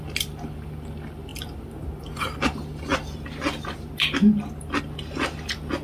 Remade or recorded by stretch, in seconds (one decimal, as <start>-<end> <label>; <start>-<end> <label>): 0.0-5.8 recorded